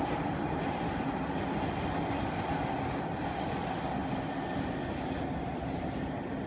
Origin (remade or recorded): recorded